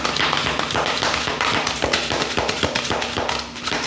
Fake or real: real